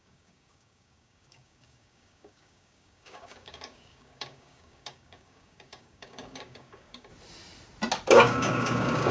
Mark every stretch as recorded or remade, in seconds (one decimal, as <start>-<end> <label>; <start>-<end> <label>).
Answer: 0.0-7.1 remade; 7.1-8.1 recorded; 8.1-9.1 remade